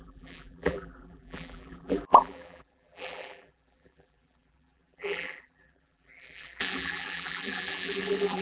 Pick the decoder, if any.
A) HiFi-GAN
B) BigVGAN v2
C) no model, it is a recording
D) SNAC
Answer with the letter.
B